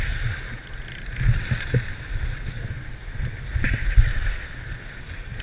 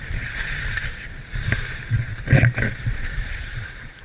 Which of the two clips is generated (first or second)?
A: second